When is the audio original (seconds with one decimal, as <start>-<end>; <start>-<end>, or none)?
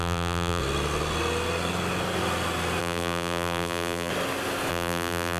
0.6-2.8; 4.1-4.7